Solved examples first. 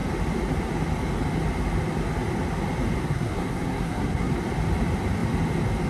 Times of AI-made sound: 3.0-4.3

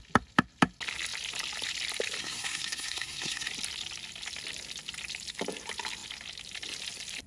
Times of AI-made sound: 2.2-3.5

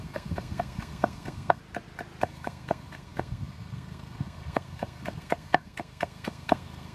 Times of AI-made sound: 0.0-1.6; 2.2-6.9